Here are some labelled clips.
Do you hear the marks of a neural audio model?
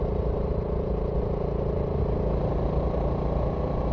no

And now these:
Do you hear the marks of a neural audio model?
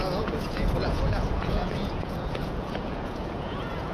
yes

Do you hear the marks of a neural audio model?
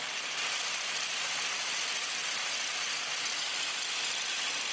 no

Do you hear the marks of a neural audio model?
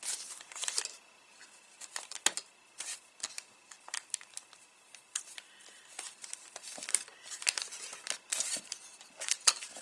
no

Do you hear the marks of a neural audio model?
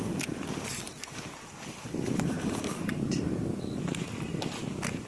no